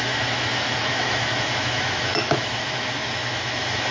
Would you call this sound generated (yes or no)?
yes